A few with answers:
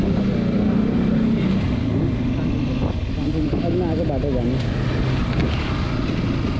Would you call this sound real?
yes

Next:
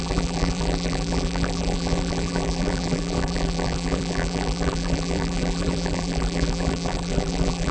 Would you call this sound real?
no